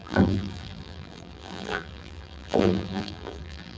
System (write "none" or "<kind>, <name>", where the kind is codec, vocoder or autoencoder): vocoder, BigVGAN v2